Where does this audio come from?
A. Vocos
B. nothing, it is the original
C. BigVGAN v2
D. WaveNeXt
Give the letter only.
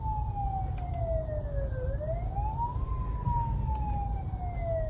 B